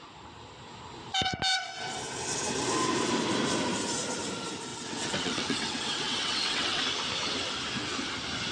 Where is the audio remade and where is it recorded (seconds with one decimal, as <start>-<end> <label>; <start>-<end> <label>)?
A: 0.0-4.7 recorded; 4.7-6.8 remade; 6.8-8.5 recorded

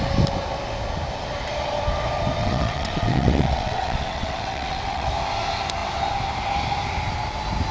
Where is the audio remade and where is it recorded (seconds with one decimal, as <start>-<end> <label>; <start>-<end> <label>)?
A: 0.0-2.4 recorded; 2.4-5.1 remade; 5.1-7.7 recorded

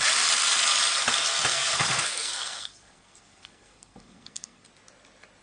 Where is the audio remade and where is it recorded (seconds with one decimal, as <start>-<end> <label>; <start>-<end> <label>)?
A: 0.0-1.5 recorded; 1.5-4.7 remade; 4.7-5.4 recorded

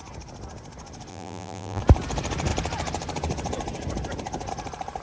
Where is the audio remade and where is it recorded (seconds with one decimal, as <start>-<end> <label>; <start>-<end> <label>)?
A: 0.0-1.1 recorded; 1.1-1.8 remade; 1.8-5.0 recorded

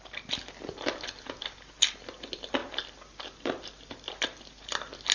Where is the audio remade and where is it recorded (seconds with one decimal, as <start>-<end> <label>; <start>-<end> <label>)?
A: 0.0-5.1 recorded

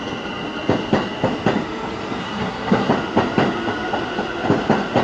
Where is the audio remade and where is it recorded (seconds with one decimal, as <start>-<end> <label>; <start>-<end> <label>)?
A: 0.0-2.2 recorded; 2.2-2.9 remade; 2.9-5.0 recorded

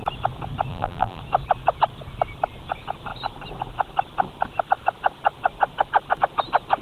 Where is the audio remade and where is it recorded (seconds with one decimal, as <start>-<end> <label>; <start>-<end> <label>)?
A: 0.0-0.7 recorded; 0.7-1.2 remade; 1.2-6.8 recorded

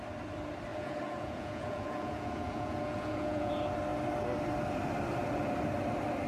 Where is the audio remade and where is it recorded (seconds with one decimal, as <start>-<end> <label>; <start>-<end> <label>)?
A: 0.0-0.7 recorded; 0.7-3.5 remade; 3.5-6.3 recorded